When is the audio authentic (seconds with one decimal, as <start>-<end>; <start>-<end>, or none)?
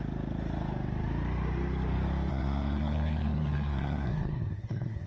0.0-2.3